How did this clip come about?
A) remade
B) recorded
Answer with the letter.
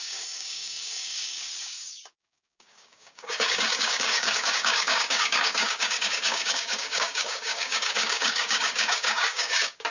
A